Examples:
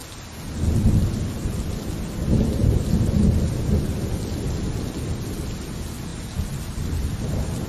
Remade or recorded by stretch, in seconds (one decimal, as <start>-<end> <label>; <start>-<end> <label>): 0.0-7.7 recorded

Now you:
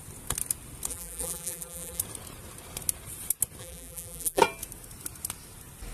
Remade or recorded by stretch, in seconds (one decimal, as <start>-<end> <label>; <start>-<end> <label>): 0.0-0.9 recorded; 0.9-2.0 remade; 2.0-3.6 recorded; 3.6-4.4 remade; 4.4-5.9 recorded

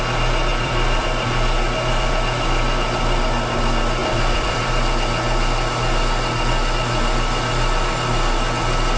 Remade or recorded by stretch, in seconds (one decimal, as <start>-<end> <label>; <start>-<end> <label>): 0.0-0.5 recorded; 0.5-2.1 remade; 2.1-4.0 recorded; 4.0-4.7 remade; 4.7-9.0 recorded

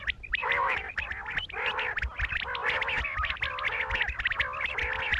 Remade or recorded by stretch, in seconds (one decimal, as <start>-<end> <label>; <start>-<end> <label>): 0.0-0.4 recorded; 0.4-1.0 remade; 1.0-5.2 recorded

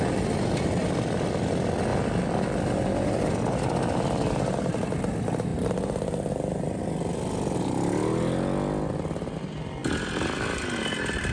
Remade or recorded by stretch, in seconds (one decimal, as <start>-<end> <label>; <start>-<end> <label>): 0.0-11.3 recorded

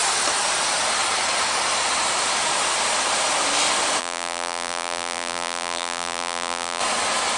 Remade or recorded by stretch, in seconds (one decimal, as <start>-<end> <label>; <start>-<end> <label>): 0.0-4.0 recorded; 4.0-6.8 remade; 6.8-7.4 recorded

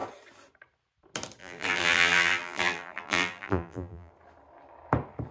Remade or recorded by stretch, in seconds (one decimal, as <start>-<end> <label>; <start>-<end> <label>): 0.0-1.4 recorded; 1.4-4.1 remade; 4.1-5.3 recorded

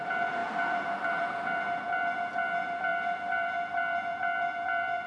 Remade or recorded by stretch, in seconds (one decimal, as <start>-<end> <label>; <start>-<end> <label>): 0.0-5.1 remade